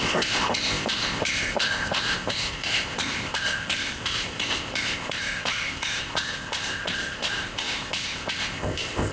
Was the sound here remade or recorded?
remade